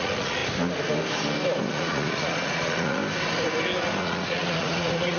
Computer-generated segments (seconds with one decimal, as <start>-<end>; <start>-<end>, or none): 0.0-0.4; 1.6-3.0; 4.0-5.2

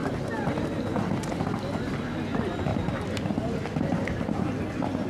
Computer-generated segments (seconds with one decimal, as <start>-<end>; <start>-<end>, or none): none

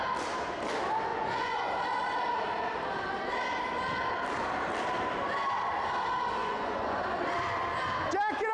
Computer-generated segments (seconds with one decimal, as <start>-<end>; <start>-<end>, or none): 1.1-1.7; 6.4-7.0

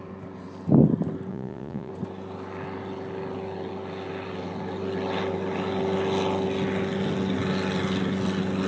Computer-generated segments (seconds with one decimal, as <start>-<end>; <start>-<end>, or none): 1.3-1.9

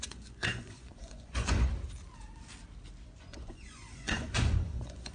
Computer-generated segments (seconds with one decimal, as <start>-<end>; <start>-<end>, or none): 0.0-1.7; 3.2-5.1

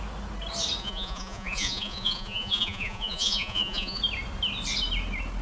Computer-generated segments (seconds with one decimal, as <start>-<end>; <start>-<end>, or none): 0.8-4.0

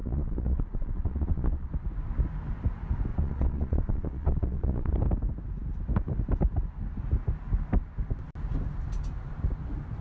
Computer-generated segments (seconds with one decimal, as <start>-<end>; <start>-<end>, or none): 0.0-1.7; 3.1-4.9